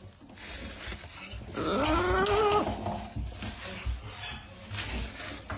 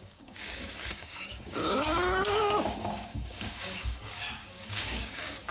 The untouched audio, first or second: first